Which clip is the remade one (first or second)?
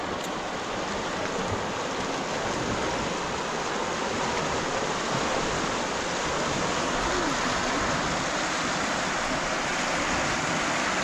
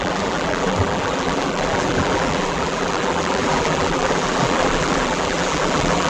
second